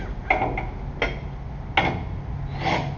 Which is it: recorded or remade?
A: recorded